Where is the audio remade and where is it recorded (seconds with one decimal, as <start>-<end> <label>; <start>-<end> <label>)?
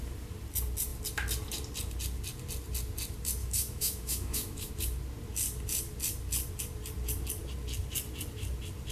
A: 0.0-3.4 recorded; 3.4-4.7 remade; 4.7-8.9 recorded